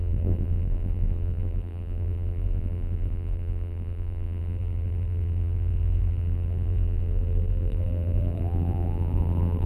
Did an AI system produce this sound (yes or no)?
yes